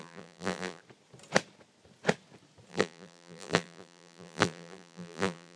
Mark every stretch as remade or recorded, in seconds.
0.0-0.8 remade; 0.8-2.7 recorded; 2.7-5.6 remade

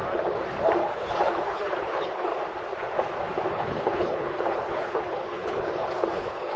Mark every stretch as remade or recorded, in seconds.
0.0-0.8 recorded; 0.8-2.3 remade; 2.3-3.5 recorded; 3.5-6.6 remade